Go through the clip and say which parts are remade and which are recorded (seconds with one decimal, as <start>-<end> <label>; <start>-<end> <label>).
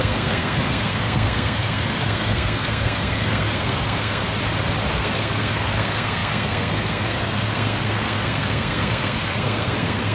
0.0-4.2 remade; 4.2-4.9 recorded; 4.9-10.1 remade